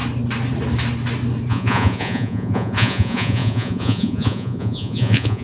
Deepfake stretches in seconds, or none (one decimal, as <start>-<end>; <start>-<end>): 1.5-5.4